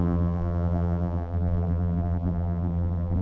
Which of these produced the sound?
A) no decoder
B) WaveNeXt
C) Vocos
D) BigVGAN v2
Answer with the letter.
D